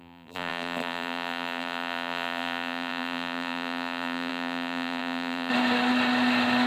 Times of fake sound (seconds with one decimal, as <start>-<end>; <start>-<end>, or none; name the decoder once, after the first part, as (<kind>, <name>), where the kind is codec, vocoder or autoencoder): 0.0-5.5 (vocoder, BigVGAN v2)